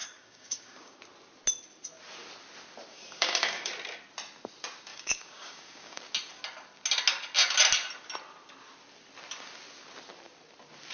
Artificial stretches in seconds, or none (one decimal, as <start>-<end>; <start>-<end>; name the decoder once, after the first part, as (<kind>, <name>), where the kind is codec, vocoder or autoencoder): 0.0-1.0 (codec, DAC); 2.9-3.7; 4.9-6.0